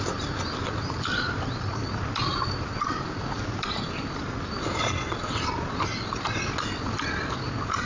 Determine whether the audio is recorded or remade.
recorded